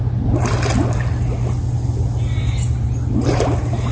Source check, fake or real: real